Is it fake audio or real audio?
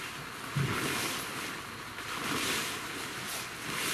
real